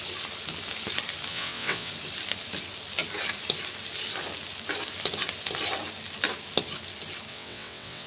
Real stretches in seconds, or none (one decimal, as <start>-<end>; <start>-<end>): 0.0-1.3; 1.9-7.3